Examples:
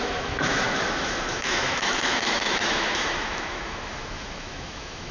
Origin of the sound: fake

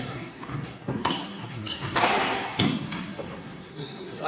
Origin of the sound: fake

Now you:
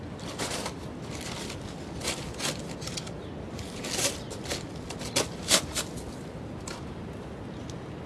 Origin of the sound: real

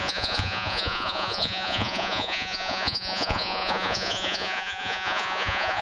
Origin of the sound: fake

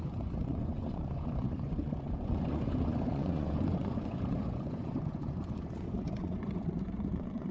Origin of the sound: fake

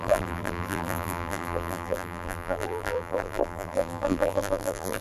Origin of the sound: fake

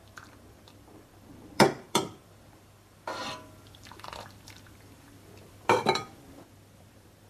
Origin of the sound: fake